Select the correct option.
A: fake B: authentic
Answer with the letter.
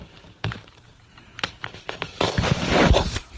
A